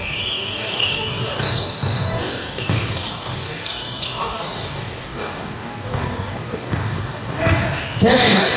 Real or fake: fake